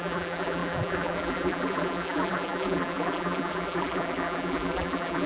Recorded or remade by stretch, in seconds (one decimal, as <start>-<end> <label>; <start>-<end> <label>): 0.0-5.3 remade